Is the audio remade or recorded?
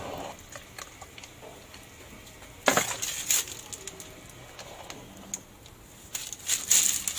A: recorded